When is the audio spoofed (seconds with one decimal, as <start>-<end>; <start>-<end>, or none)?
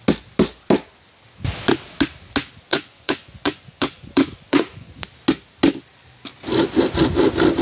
2.7-4.9